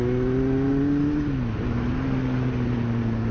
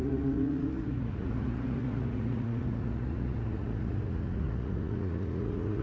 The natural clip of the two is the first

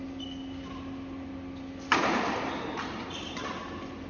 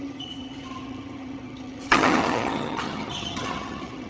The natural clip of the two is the first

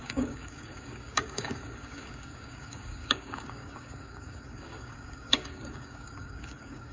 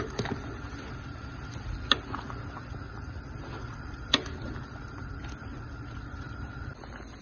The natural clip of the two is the second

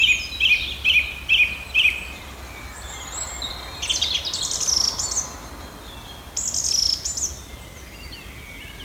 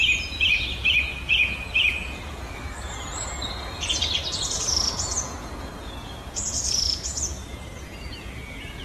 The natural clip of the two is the first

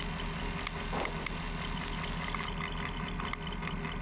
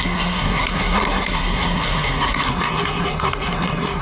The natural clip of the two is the first